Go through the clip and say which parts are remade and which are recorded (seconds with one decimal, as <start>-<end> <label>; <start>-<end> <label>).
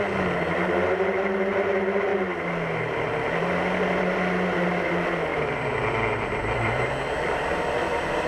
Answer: 0.0-5.3 recorded; 5.3-6.9 remade; 6.9-8.3 recorded